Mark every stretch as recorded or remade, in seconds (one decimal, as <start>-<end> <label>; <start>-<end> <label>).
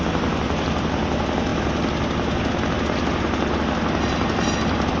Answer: 0.0-5.0 recorded